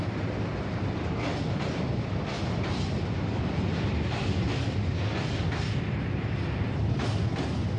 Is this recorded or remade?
recorded